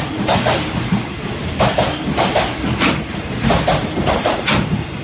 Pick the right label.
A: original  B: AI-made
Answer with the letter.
A